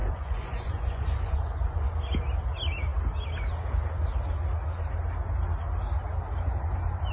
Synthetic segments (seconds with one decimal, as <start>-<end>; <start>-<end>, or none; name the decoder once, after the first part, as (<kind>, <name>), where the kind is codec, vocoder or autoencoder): 0.0-1.9 (vocoder, Vocos)